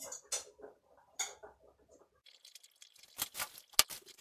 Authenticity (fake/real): real